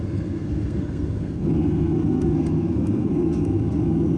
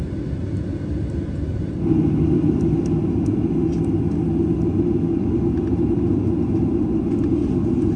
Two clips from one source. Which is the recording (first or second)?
second